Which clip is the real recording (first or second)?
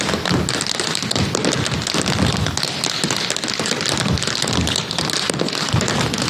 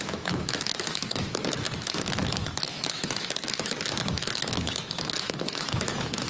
first